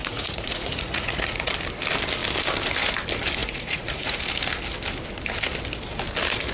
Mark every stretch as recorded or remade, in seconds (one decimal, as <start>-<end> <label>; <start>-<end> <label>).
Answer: 0.0-1.5 remade; 1.5-3.4 recorded; 3.4-4.2 remade; 4.2-6.5 recorded